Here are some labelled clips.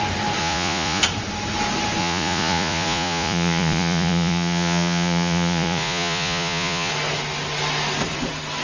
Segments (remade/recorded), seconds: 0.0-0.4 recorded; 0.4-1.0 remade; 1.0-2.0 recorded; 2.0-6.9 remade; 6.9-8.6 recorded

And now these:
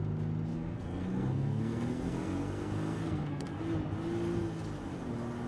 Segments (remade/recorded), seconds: 0.0-0.5 recorded; 0.5-3.6 remade; 3.6-5.5 recorded

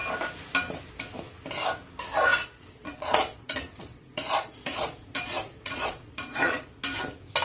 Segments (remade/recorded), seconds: 0.0-2.3 recorded; 2.3-6.7 remade; 6.7-7.4 recorded

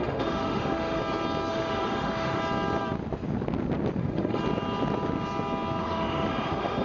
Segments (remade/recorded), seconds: 0.0-1.0 remade; 1.0-1.5 recorded; 1.5-2.4 remade; 2.4-4.0 recorded; 4.0-4.4 remade; 4.4-5.8 recorded; 5.8-6.8 remade